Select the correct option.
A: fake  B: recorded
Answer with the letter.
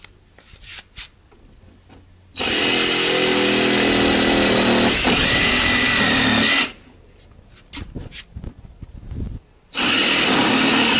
B